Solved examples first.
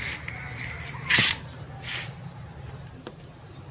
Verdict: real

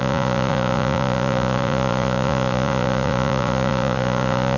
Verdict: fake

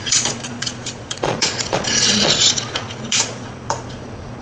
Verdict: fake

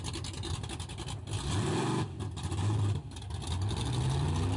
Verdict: real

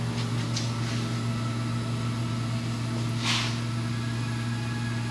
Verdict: real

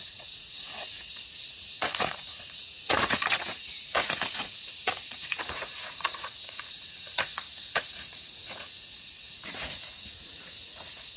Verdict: fake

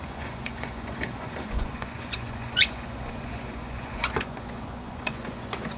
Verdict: fake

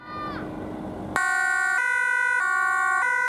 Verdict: real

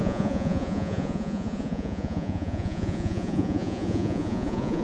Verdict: fake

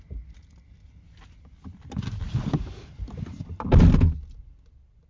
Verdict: real